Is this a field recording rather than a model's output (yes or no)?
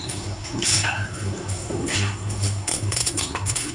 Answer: no